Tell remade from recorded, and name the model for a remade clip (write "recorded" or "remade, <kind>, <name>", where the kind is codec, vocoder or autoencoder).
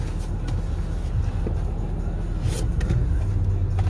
recorded